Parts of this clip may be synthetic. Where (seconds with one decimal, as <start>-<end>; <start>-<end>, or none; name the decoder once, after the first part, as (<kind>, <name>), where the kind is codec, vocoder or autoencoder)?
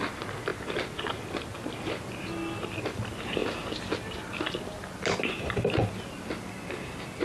none